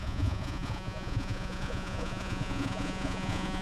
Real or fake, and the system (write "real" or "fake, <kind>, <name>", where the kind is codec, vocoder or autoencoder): fake, vocoder, Vocos